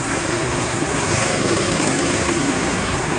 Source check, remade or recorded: remade